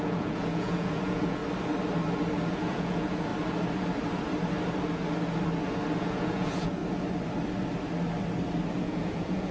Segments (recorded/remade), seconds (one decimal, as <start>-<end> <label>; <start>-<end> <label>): 0.0-1.4 remade; 1.4-2.5 recorded; 2.5-3.3 remade; 3.3-6.0 recorded; 6.0-6.8 remade; 6.8-8.8 recorded; 8.8-9.5 remade